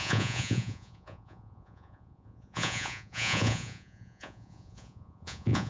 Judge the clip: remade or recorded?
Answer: remade